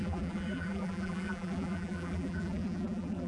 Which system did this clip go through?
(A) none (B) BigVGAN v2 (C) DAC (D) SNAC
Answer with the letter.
B